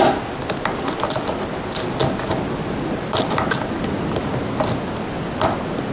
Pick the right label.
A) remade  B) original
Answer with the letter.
B